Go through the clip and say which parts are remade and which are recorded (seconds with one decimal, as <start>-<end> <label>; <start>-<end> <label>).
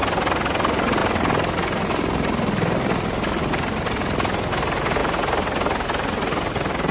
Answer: 0.0-6.9 recorded